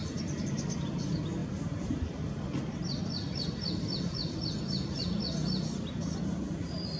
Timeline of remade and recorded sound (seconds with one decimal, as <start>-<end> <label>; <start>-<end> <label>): 0.0-7.0 recorded